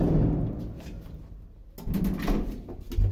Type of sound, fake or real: real